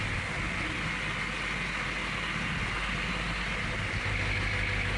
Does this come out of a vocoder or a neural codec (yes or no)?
no